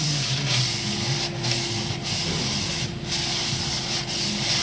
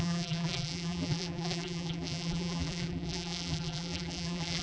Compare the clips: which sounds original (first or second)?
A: first